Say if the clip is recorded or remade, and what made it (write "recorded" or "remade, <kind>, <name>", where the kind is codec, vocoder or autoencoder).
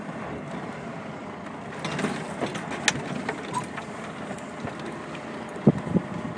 recorded